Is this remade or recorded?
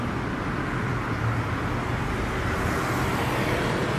recorded